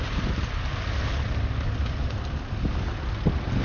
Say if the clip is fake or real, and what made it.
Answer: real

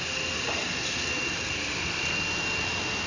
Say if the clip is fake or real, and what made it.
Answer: real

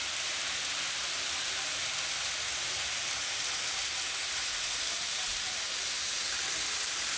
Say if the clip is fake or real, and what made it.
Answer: real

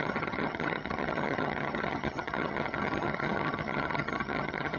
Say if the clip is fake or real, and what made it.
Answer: fake, vocoder, HiFi-GAN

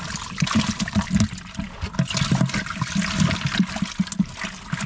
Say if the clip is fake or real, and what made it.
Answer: real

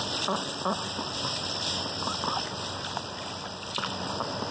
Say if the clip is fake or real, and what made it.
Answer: real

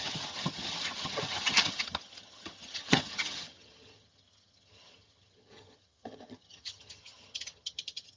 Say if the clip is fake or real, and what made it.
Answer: fake, vocoder, HiFi-GAN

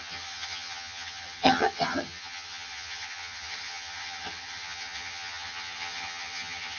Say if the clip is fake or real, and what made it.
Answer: fake, vocoder, HiFi-GAN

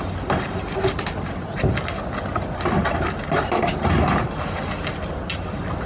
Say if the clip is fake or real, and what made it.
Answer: real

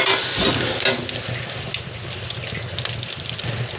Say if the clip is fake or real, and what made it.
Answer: real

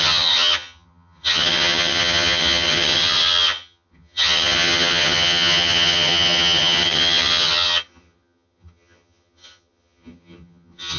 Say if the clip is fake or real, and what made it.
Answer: fake, vocoder, HiFi-GAN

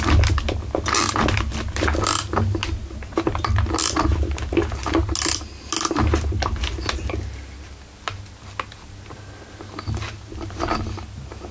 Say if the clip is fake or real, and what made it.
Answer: real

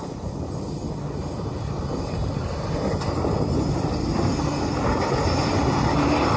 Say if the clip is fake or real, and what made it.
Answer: real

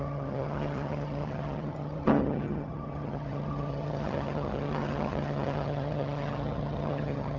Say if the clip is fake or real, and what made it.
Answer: fake, vocoder, HiFi-GAN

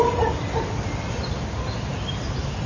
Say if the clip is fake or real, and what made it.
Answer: real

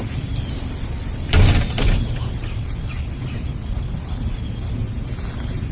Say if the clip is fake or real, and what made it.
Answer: real